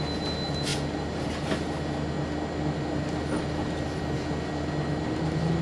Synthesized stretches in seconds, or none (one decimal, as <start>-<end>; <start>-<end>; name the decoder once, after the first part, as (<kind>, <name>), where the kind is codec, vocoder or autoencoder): none